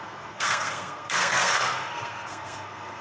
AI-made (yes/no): yes